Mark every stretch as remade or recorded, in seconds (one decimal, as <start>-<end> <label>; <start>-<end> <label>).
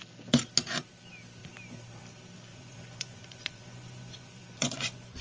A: 0.0-2.5 recorded; 2.5-5.2 remade